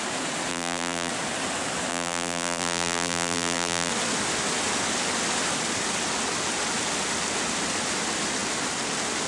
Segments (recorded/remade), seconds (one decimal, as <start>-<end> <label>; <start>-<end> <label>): 0.0-0.5 recorded; 0.5-1.1 remade; 1.1-1.9 recorded; 1.9-3.9 remade; 3.9-9.3 recorded